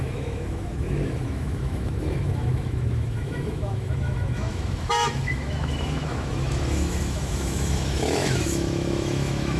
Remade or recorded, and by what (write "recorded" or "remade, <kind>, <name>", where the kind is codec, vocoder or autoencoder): remade, autoencoder, DAC-VAE